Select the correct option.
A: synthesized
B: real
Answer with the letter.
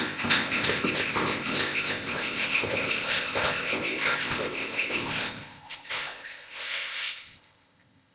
A